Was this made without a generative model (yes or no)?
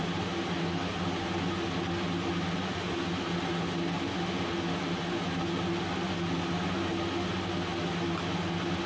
yes